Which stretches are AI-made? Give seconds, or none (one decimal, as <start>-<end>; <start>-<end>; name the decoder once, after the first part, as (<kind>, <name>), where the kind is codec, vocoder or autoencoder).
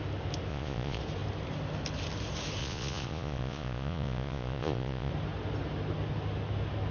0.5-1.0 (vocoder, Vocos); 2.6-5.1